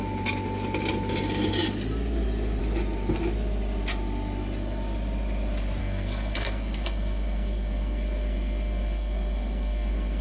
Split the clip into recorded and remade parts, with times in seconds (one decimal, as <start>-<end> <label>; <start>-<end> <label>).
0.0-5.8 recorded; 5.8-10.2 remade